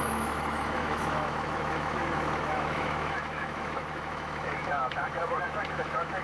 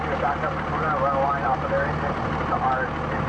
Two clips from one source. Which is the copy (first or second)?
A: first